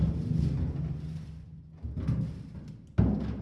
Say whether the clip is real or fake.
real